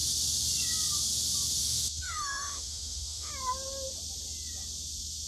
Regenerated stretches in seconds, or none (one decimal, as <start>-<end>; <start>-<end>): 1.6-3.3